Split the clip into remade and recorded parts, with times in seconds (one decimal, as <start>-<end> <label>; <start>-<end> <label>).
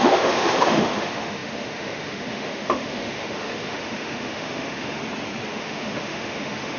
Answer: 0.0-5.0 remade; 5.0-5.5 recorded; 5.5-6.8 remade